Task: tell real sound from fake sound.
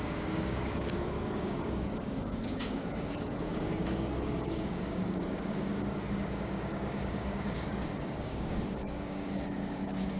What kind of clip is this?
fake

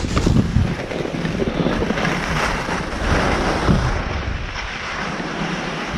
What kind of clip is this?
real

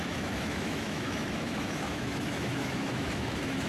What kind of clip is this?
fake